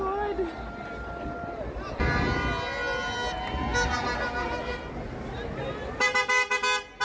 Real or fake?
real